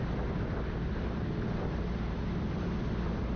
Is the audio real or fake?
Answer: real